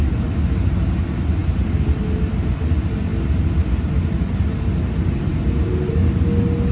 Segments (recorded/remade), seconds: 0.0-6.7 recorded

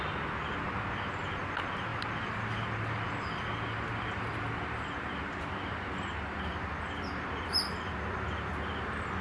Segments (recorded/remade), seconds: 0.0-1.9 recorded; 1.9-5.4 remade; 5.4-9.2 recorded

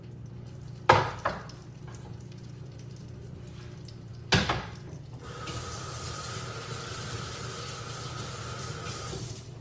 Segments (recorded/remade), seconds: 0.0-9.6 remade

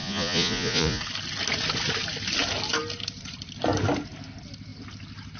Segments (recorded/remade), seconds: 0.0-1.0 remade; 1.0-5.4 recorded

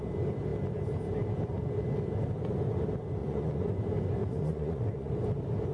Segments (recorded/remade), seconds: 0.0-3.2 recorded; 3.2-3.8 remade; 3.8-4.2 recorded; 4.2-5.1 remade; 5.1-5.7 recorded

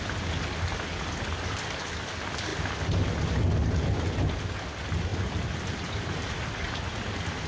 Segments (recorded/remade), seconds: 0.0-5.1 recorded; 5.1-6.8 remade; 6.8-7.5 recorded